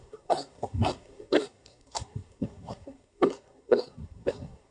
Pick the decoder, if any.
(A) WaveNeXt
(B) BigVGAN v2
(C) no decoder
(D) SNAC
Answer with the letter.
D